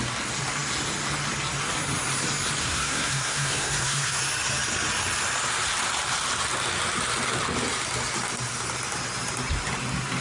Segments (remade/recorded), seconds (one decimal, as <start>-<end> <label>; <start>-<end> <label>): 0.0-2.6 recorded; 2.6-4.2 remade; 4.2-10.2 recorded